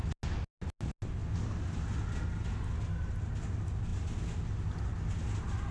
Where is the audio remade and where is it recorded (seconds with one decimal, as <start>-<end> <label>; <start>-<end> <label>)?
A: 0.0-5.7 recorded

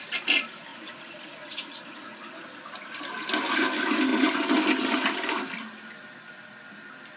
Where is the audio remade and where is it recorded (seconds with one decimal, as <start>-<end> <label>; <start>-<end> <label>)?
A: 0.0-0.7 recorded; 0.7-2.4 remade; 2.4-7.2 recorded

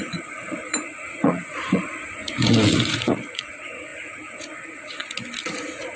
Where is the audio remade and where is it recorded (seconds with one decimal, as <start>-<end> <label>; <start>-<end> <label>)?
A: 0.0-5.0 remade; 5.0-5.5 recorded; 5.5-6.0 remade

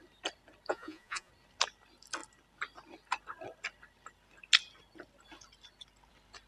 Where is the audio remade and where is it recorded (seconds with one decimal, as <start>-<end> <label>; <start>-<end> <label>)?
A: 0.0-0.7 recorded; 0.7-1.3 remade; 1.3-6.5 recorded

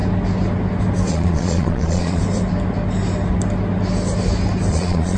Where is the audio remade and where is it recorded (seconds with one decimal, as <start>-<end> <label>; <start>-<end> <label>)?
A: 0.0-1.1 recorded; 1.1-2.2 remade; 2.2-4.7 recorded; 4.7-5.2 remade